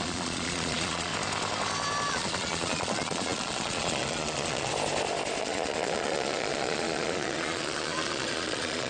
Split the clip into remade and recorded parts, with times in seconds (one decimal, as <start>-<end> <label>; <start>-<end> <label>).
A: 0.0-1.1 remade; 1.1-2.1 recorded; 2.1-4.7 remade; 4.7-5.4 recorded; 5.4-8.9 remade